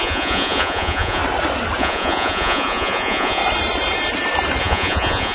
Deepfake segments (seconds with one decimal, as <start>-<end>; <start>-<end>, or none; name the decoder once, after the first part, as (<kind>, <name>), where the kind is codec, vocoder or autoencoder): 0.0-1.2 (vocoder, Vocos); 1.8-3.4; 4.6-5.3